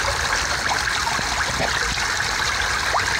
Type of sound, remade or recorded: recorded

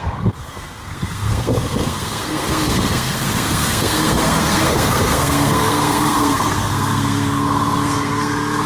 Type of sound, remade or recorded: remade